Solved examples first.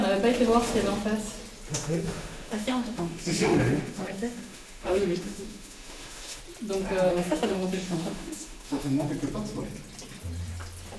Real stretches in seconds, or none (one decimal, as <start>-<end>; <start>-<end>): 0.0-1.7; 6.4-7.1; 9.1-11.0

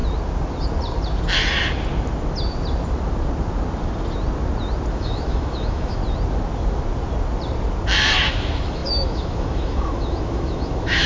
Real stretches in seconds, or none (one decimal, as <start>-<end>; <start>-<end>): 0.0-4.9; 6.0-8.1

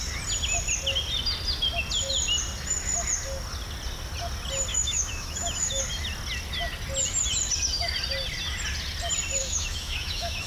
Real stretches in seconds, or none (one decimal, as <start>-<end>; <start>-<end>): 0.0-4.7; 5.8-9.4

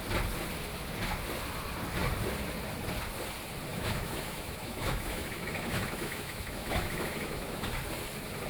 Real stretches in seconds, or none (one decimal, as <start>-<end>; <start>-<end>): 0.0-3.7; 7.8-8.5